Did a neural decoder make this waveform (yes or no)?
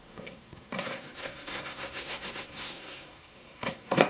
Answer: yes